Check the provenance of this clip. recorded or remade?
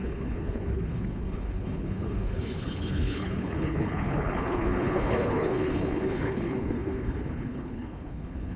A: remade